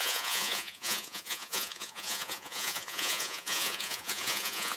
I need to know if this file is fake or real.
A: fake